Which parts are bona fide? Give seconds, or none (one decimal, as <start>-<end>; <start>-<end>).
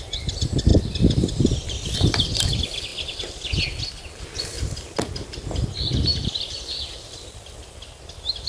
0.0-0.7; 1.3-6.1; 7.0-8.5